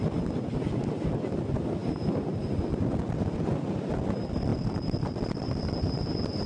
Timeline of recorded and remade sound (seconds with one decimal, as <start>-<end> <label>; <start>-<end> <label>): 0.0-4.5 recorded; 4.5-5.6 remade; 5.6-6.5 recorded